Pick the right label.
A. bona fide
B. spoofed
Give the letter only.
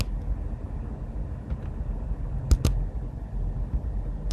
A